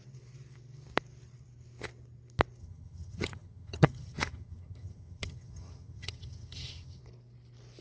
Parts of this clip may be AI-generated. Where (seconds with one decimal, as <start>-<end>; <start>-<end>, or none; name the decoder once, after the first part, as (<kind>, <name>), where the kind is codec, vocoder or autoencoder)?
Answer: 2.6-7.0 (vocoder, HiFi-GAN)